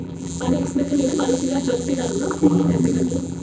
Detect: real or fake fake